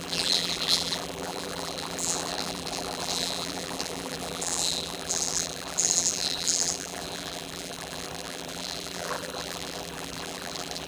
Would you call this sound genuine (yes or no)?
no